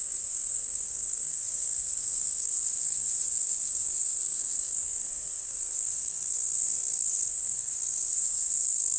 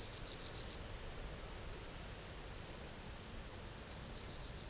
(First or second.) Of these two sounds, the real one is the second